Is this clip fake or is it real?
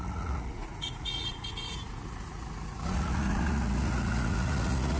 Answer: fake